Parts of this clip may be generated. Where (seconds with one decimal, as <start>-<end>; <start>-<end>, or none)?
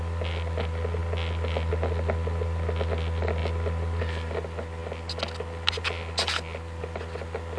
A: none